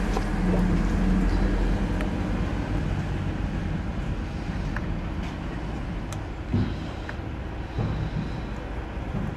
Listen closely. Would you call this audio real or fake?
real